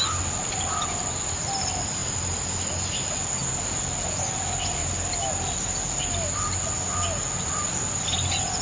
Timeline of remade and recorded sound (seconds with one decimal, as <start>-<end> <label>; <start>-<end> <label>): 0.0-8.6 recorded